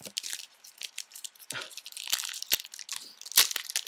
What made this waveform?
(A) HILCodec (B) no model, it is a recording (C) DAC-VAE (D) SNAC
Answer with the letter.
B